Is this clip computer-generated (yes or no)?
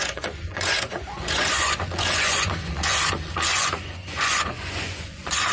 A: yes